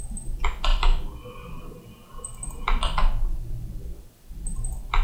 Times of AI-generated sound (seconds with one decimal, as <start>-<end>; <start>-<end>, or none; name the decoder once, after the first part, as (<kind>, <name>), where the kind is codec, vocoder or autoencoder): none